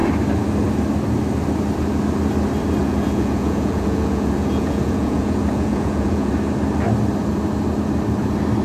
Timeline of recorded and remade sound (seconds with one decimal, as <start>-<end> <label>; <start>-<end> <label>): 0.0-2.8 recorded; 2.8-6.3 remade; 6.3-8.6 recorded